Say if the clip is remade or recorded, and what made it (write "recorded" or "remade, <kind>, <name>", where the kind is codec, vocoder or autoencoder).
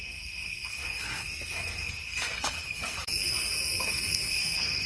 remade, codec, SNAC